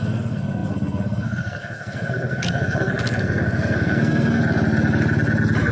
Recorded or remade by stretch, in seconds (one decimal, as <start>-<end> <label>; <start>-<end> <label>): 0.0-4.4 remade; 4.4-5.7 recorded